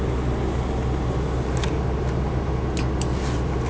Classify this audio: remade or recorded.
recorded